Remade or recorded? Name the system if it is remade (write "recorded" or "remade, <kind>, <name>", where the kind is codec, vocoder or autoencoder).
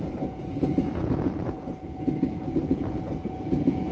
remade, vocoder, Vocos